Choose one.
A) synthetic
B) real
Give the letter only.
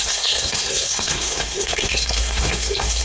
A